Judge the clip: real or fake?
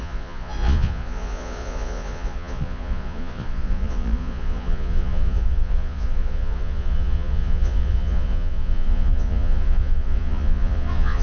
fake